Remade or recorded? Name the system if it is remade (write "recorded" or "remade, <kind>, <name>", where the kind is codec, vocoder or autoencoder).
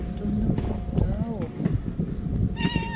recorded